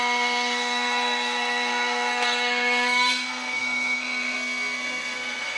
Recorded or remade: remade